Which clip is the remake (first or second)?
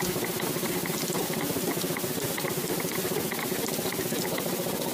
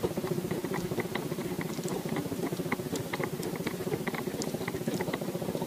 second